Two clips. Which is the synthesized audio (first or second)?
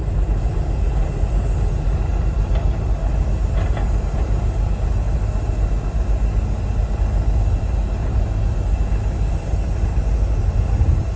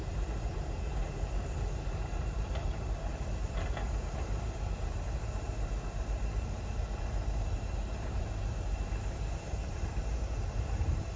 second